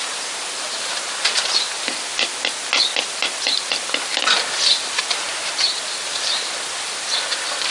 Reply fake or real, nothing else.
real